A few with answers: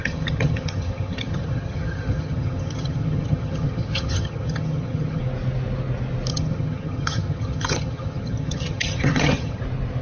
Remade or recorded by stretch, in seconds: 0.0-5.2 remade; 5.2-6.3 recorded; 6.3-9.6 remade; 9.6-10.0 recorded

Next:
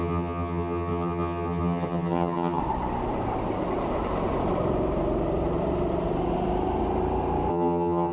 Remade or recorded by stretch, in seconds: 0.0-2.6 remade; 2.6-7.5 recorded; 7.5-8.1 remade

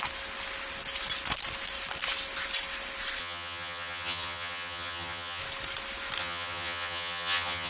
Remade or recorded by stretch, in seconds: 0.0-3.2 recorded; 3.2-5.4 remade; 5.4-6.2 recorded; 6.2-7.7 remade

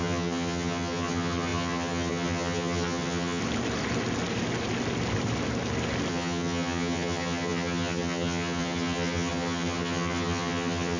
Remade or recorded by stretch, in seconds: 0.0-3.4 remade; 3.4-6.1 recorded; 6.1-11.0 remade

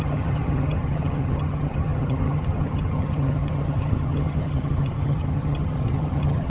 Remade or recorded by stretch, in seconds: 0.0-6.5 remade

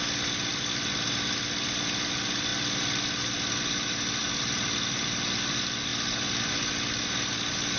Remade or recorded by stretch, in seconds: 0.0-7.8 recorded

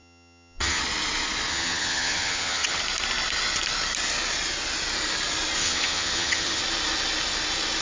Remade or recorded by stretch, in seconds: 0.0-0.8 remade; 0.8-1.5 recorded; 1.5-2.8 remade; 2.8-5.6 recorded; 5.6-6.6 remade; 6.6-7.8 recorded

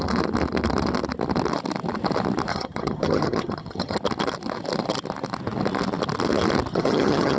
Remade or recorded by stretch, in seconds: 0.0-2.5 recorded; 2.5-4.0 remade; 4.0-6.7 recorded; 6.7-7.4 remade